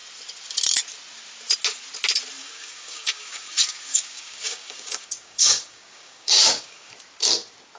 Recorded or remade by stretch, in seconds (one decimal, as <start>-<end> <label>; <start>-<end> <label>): 0.0-2.4 recorded; 2.4-6.9 remade; 6.9-7.8 recorded